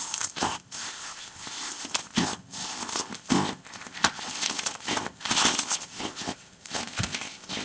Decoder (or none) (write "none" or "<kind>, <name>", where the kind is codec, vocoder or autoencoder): codec, ZipCodec